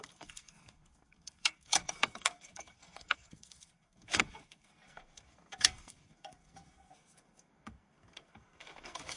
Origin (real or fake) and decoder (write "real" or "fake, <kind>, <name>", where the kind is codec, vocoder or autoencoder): fake, codec, SNAC